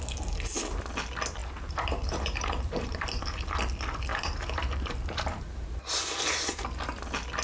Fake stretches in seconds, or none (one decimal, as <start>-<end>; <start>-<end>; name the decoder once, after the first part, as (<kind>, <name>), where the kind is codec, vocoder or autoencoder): 1.4-3.2 (vocoder, BigVGAN v2); 4.1-5.9